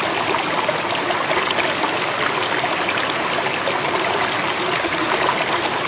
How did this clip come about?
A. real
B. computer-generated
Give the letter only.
A